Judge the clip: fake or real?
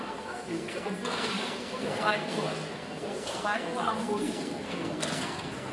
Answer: fake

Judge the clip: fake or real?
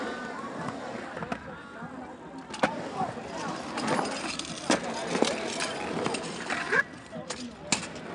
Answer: real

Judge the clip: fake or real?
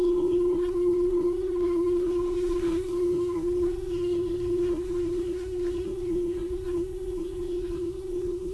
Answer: fake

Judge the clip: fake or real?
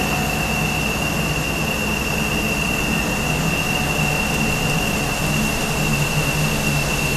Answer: real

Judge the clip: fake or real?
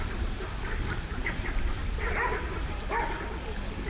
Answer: real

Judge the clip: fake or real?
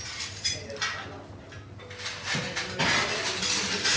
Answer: real